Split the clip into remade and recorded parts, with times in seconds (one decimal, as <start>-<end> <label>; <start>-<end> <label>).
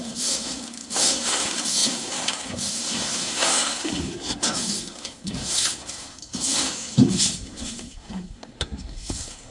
0.0-9.5 remade